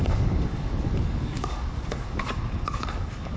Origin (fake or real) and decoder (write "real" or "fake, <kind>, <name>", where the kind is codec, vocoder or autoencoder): fake, codec, DAC